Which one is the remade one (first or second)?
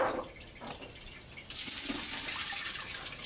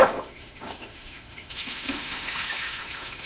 second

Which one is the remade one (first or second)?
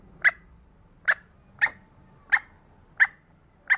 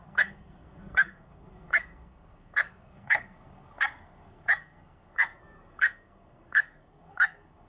second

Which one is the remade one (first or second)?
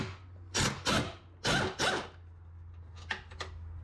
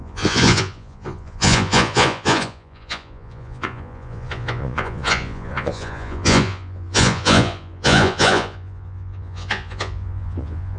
second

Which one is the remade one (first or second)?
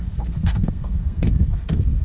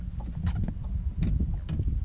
first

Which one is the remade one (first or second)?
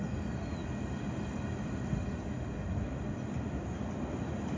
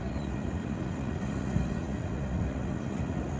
second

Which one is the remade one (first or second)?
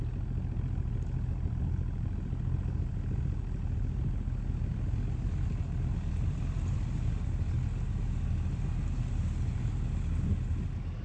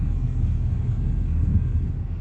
second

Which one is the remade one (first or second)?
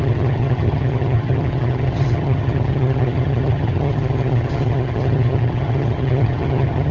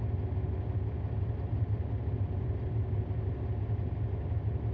first